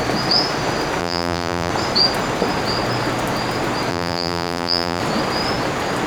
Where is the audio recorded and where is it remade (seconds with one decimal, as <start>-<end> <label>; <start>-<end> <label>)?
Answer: 0.0-1.0 recorded; 1.0-1.7 remade; 1.7-3.9 recorded; 3.9-5.0 remade; 5.0-6.1 recorded